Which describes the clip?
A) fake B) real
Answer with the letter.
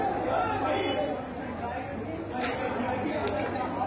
B